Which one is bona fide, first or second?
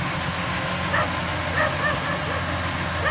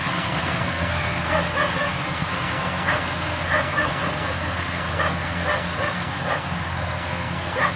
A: first